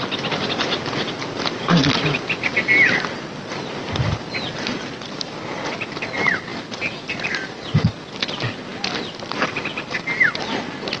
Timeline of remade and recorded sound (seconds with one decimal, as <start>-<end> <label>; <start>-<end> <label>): 0.0-11.0 recorded